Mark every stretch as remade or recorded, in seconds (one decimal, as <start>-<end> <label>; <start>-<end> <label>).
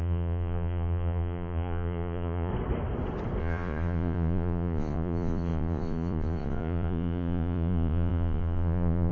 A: 0.0-2.5 remade; 2.5-3.4 recorded; 3.4-9.1 remade